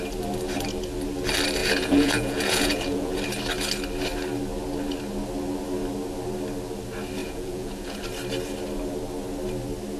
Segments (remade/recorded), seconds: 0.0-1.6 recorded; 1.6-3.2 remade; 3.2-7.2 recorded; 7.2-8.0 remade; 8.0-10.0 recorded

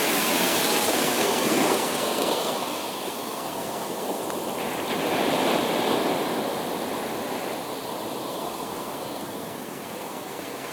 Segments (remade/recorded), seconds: 0.0-4.2 remade; 4.2-8.3 recorded; 8.3-10.7 remade